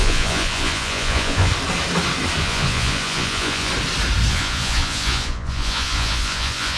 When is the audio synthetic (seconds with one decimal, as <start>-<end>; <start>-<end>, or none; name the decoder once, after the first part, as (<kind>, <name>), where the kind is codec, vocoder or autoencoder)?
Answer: 0.0-1.5 (vocoder, Vocos); 2.4-3.7; 4.3-6.8